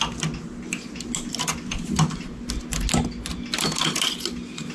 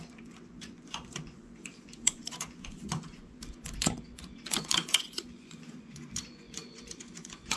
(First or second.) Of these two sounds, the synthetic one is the second